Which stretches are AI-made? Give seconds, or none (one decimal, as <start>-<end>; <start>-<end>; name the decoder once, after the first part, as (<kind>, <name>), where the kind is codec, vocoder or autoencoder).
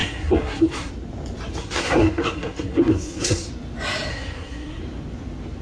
0.0-0.9 (codec, SNAC); 1.6-3.5; 4.1-4.8